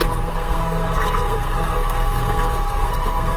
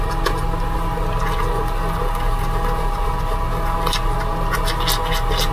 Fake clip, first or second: first